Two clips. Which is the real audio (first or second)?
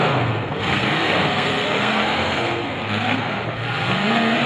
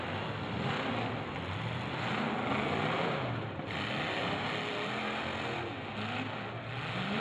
second